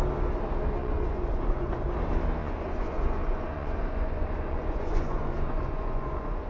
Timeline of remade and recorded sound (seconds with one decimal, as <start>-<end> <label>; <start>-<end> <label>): 0.0-0.8 recorded; 0.8-1.7 remade; 1.7-2.4 recorded; 2.4-6.5 remade